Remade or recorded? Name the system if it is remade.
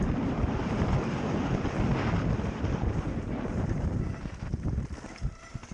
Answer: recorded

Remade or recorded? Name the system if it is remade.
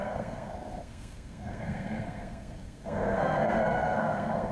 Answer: remade, codec, SNAC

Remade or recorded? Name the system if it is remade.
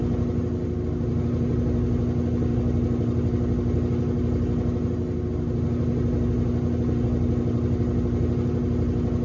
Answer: recorded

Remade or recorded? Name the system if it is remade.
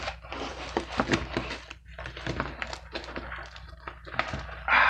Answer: recorded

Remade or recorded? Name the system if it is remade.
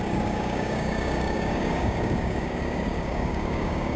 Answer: remade, codec, DAC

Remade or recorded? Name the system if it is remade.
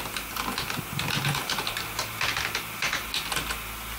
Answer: recorded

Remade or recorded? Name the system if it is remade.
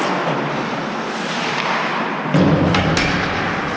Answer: recorded